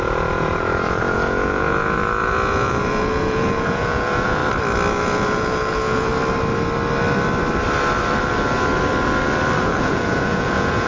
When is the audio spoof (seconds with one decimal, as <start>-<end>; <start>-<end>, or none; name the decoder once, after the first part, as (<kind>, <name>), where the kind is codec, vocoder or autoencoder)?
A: 0.0-4.4 (vocoder, Vocos); 4.9-6.1; 9.6-10.9